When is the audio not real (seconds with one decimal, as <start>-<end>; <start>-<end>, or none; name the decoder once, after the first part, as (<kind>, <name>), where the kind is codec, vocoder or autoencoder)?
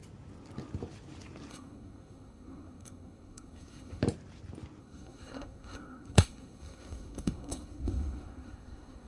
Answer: 1.5-4.0 (codec, SNAC); 4.8-9.1